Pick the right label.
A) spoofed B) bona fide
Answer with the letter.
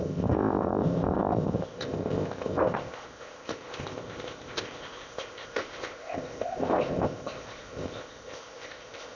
A